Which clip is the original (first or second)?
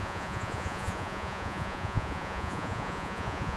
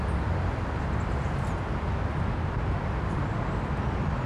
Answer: second